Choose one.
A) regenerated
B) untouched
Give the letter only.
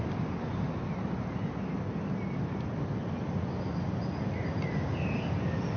B